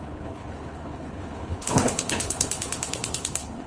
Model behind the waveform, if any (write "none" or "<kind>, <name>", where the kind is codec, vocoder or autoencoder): codec, HILCodec